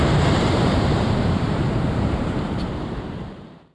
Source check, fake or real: fake